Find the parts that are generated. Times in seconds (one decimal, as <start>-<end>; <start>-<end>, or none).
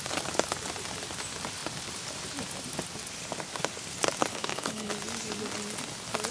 4.3-4.9